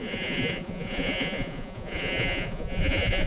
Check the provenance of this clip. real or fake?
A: fake